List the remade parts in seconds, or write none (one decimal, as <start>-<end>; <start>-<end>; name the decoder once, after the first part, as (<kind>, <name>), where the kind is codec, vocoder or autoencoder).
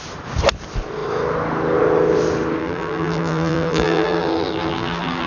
2.6-5.3 (vocoder, BigVGAN v2)